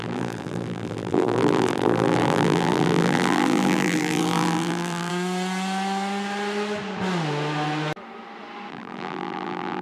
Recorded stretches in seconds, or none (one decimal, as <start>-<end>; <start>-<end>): 5.1-8.7